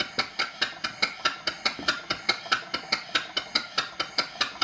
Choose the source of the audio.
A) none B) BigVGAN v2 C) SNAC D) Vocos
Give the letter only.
A